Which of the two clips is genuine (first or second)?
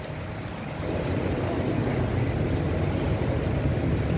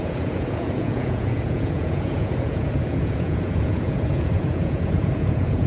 first